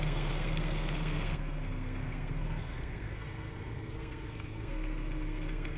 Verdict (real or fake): fake